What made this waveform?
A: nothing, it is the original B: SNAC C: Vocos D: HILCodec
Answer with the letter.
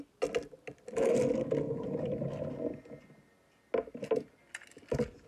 A